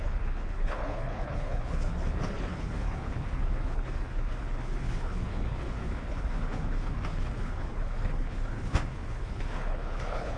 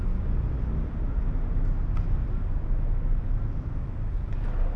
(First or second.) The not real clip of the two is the first